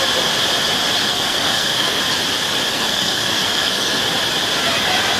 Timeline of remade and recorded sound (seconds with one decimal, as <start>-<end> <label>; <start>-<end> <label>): 0.0-1.0 recorded; 1.0-2.0 remade; 2.0-2.7 recorded; 2.7-4.0 remade; 4.0-5.2 recorded